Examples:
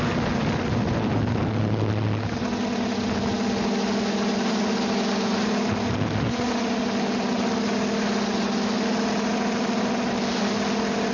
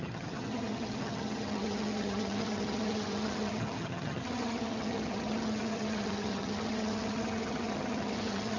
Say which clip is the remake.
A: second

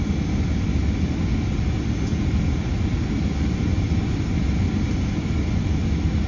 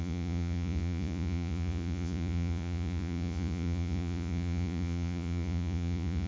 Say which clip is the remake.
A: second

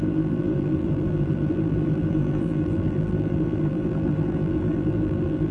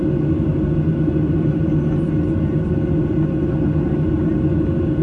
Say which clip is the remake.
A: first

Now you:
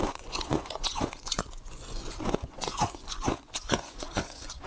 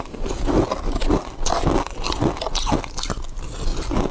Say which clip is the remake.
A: first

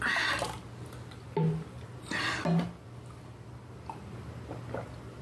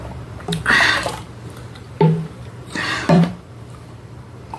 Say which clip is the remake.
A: second